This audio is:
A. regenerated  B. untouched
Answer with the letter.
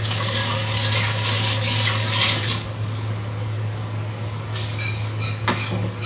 A